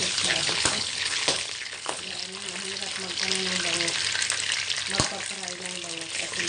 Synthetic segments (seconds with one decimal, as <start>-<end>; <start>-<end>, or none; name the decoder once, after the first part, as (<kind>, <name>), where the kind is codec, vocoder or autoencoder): 0.0-2.2 (codec, HILCodec); 6.1-6.5